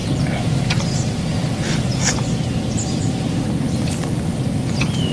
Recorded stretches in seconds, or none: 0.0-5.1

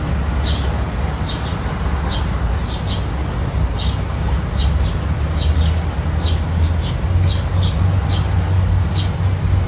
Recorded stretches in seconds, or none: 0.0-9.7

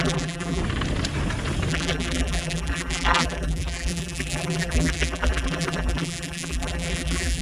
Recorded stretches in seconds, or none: 0.6-1.7

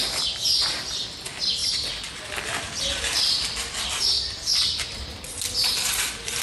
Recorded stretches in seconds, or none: 0.0-6.4

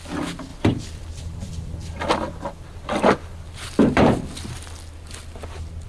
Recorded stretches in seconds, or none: 0.0-0.5; 4.0-5.9

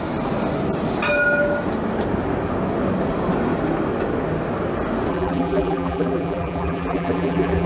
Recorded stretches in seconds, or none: 0.0-5.1

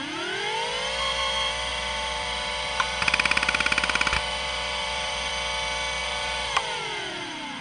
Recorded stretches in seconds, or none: 0.0-1.7; 5.3-6.0